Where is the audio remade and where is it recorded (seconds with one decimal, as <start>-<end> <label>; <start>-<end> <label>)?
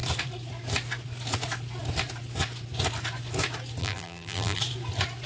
0.0-3.8 recorded; 3.8-4.6 remade; 4.6-5.3 recorded